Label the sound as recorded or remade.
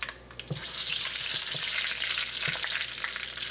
recorded